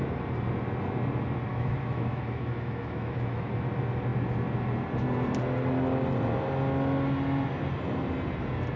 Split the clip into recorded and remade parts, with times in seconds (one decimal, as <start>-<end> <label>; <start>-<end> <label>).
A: 0.0-1.5 recorded; 1.5-3.5 remade; 3.5-8.8 recorded